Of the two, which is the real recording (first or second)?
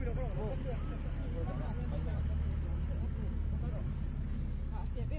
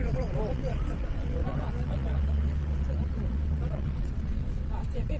first